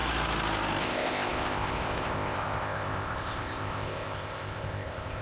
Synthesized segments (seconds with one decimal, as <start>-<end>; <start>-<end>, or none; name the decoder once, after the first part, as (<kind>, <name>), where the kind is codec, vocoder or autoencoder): 0.8-5.2 (codec, ZipCodec)